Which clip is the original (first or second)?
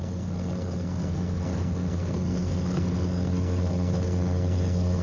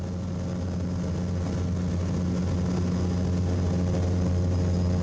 second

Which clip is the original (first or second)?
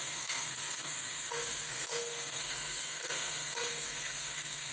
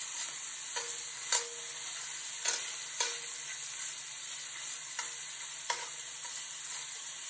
second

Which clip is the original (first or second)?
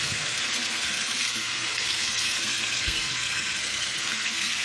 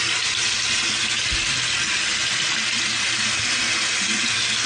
second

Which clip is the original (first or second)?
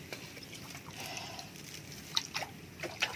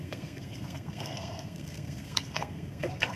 first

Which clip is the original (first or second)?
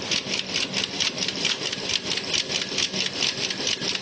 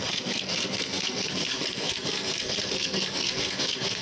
first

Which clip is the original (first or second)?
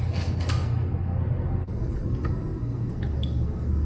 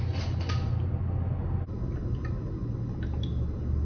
second